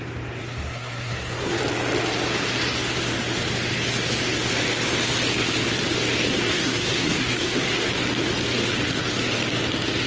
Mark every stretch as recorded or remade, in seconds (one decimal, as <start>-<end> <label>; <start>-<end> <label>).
0.0-0.4 recorded; 0.4-1.6 remade; 1.6-6.3 recorded; 6.3-7.9 remade; 7.9-10.1 recorded

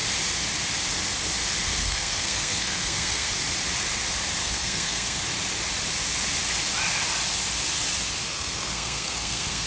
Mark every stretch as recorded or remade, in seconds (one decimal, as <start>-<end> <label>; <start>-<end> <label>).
0.0-1.8 recorded; 1.8-3.3 remade; 3.3-4.4 recorded; 4.4-5.2 remade; 5.2-8.3 recorded; 8.3-9.7 remade

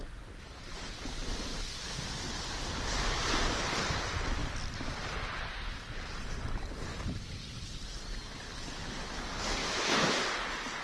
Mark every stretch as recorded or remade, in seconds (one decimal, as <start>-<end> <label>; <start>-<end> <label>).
0.0-9.6 recorded; 9.6-10.1 remade; 10.1-10.8 recorded